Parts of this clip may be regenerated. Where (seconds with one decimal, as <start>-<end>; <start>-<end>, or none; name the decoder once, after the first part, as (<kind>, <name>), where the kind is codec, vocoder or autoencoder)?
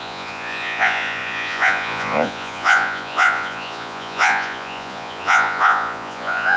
0.0-6.6 (vocoder, Vocos)